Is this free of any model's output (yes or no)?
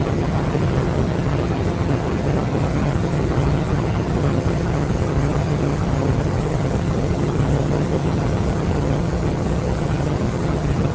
no